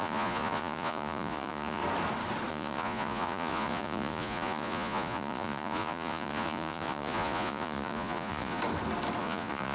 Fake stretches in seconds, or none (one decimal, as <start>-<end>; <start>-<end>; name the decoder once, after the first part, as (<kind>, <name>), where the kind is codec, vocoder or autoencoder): 0.0-1.8 (vocoder, Vocos); 2.5-8.6; 9.2-9.7